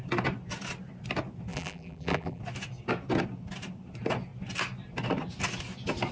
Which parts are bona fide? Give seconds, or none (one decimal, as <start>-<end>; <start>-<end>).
0.0-1.5; 2.4-6.1